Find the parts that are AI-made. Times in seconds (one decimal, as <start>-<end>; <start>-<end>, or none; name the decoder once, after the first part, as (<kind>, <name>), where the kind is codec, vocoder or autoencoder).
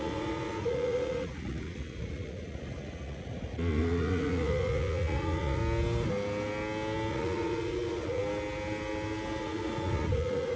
0.0-5.6 (vocoder, Vocos); 7.1-8.2; 9.4-10.6